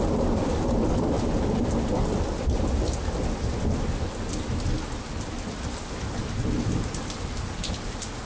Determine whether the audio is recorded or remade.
recorded